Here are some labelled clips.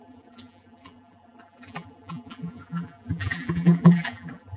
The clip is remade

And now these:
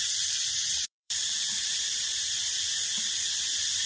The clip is remade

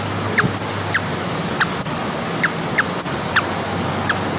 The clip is recorded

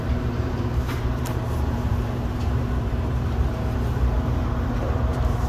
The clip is remade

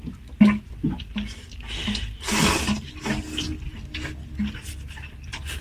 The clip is recorded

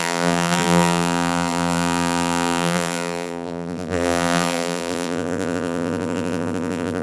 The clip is remade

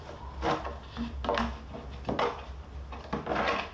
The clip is recorded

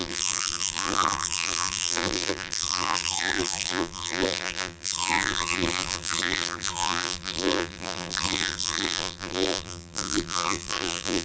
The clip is remade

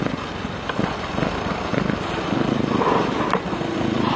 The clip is recorded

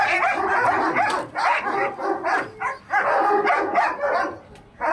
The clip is recorded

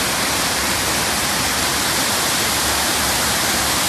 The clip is recorded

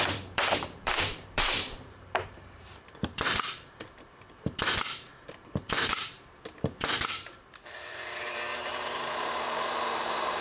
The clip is remade